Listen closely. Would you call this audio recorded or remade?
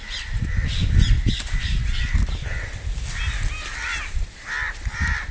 recorded